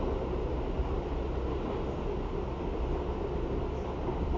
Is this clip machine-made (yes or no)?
no